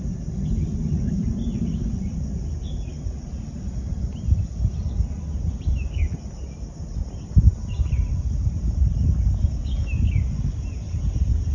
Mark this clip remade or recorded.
recorded